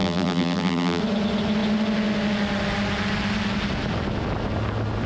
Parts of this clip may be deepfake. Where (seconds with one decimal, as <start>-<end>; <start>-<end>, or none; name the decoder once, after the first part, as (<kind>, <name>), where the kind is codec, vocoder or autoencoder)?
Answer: 0.0-1.0 (vocoder, BigVGAN v2)